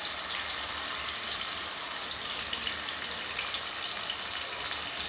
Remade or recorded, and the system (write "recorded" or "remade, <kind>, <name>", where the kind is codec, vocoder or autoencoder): recorded